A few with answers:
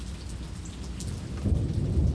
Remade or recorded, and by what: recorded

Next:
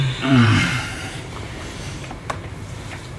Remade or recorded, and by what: remade, vocoder, BigVGAN v2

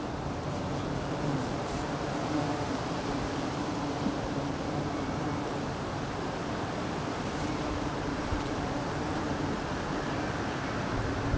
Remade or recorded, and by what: remade, vocoder, BigVGAN v2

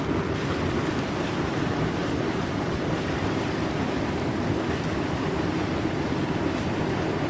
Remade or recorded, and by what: remade, vocoder, BigVGAN v2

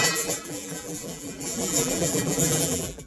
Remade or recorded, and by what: remade, vocoder, BigVGAN v2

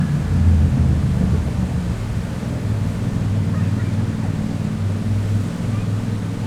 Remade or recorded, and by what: recorded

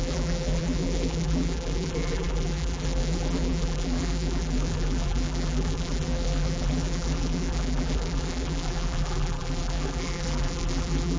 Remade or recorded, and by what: remade, vocoder, BigVGAN v2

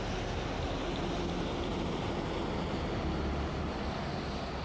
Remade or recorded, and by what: recorded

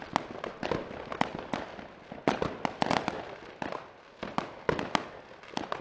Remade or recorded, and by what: recorded